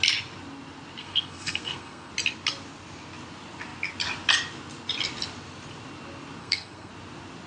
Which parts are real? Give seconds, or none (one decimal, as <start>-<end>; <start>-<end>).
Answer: 0.0-1.0; 2.1-6.4; 6.9-7.5

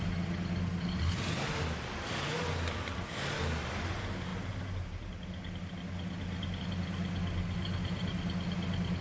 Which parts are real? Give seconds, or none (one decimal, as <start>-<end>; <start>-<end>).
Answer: 0.0-9.0

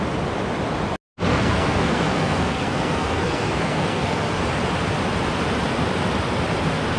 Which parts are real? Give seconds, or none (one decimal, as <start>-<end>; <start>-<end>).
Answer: 0.0-1.3; 4.4-7.0